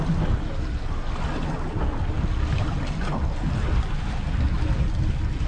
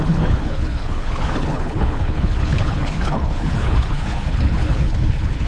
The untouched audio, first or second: first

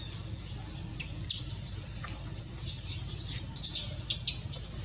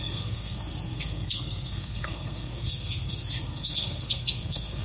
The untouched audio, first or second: first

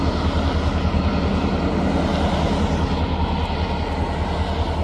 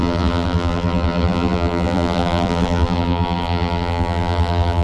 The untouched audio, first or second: first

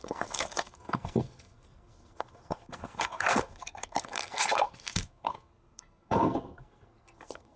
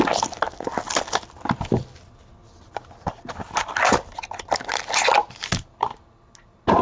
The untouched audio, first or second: second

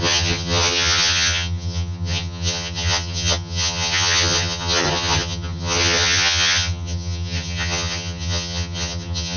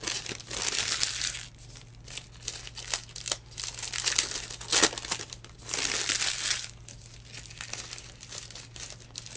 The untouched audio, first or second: second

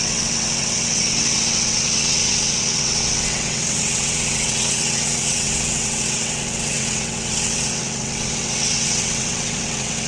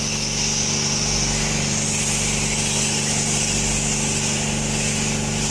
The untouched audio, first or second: second